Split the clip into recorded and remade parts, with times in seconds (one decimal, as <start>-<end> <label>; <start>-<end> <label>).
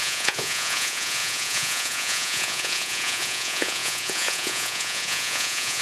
0.0-5.8 remade